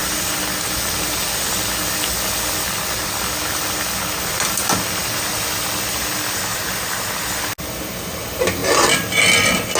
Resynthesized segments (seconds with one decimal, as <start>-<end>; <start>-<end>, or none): 0.0-3.6